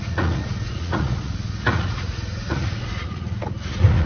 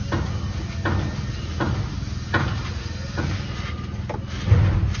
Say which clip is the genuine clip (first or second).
second